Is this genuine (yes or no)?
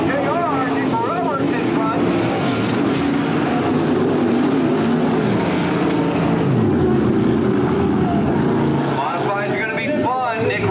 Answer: yes